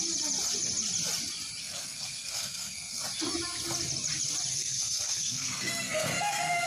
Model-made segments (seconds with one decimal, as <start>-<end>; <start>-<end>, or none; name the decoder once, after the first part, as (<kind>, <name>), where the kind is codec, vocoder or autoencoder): 1.6-3.0 (codec, SNAC); 4.5-6.7